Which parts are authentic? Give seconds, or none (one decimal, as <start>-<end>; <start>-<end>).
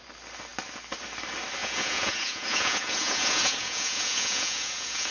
0.0-1.6